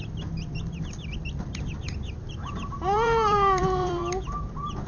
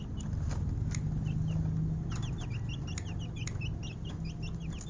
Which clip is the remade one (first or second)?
first